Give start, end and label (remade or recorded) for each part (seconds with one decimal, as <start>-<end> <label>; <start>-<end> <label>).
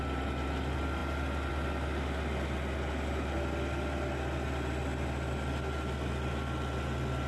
0.0-7.3 recorded